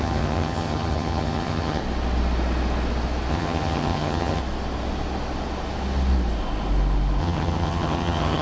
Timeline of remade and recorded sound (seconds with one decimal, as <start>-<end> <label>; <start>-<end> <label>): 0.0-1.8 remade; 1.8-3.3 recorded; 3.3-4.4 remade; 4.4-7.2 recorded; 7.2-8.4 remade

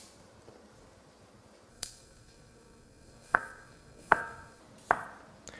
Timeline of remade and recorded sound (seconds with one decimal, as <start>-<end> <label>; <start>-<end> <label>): 0.0-1.7 recorded; 1.7-4.6 remade; 4.6-5.6 recorded

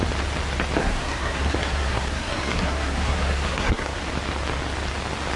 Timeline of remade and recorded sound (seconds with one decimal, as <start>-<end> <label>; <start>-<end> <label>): 0.0-0.8 recorded; 0.8-4.0 remade; 4.0-5.4 recorded

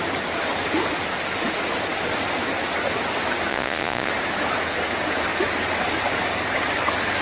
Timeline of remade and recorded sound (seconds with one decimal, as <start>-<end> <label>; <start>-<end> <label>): 0.0-3.5 recorded; 3.5-4.1 remade; 4.1-7.2 recorded